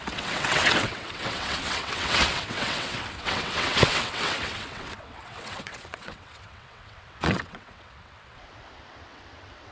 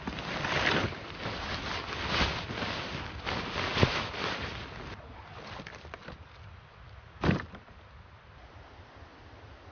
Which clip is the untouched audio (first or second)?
second